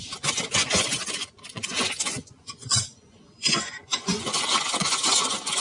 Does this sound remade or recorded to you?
remade